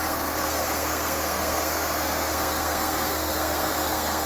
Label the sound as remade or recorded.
remade